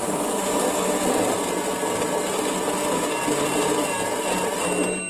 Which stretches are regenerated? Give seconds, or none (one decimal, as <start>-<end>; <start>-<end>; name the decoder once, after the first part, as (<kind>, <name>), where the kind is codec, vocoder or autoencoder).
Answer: none